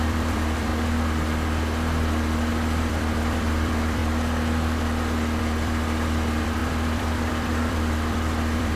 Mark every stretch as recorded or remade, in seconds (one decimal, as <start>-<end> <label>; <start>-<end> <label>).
0.0-0.7 remade; 0.7-2.5 recorded; 2.5-4.0 remade; 4.0-5.4 recorded; 5.4-8.8 remade